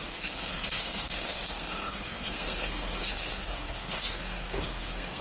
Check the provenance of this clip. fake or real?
fake